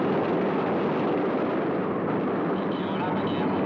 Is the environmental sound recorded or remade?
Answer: recorded